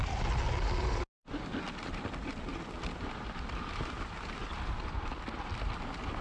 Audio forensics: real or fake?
real